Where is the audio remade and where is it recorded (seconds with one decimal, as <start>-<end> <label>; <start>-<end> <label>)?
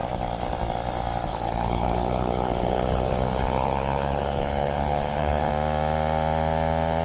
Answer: 0.0-1.3 recorded; 1.3-5.5 remade; 5.5-7.0 recorded